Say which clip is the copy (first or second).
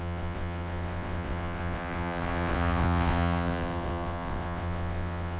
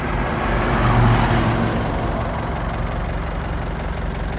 first